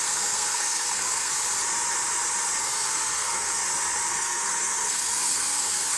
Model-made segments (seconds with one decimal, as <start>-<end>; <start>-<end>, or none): 0.0-1.3; 2.6-3.6; 4.1-6.0